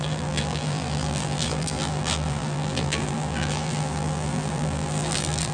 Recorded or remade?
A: remade